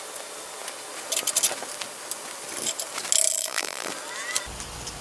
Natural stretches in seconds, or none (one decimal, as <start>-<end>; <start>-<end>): 0.0-3.3; 3.9-5.0